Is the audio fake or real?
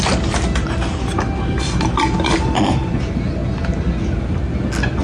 real